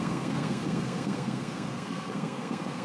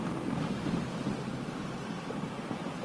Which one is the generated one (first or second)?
first